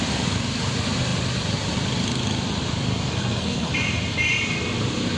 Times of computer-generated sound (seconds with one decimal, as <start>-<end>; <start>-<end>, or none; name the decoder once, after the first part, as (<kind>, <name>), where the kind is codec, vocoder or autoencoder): 2.9-3.7 (codec, SNAC)